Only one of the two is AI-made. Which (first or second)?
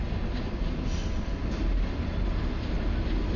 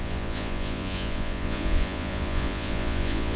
second